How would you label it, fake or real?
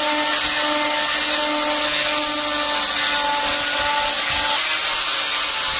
real